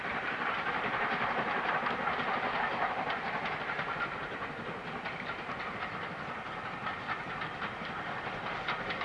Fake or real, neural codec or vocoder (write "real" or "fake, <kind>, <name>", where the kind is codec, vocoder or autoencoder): real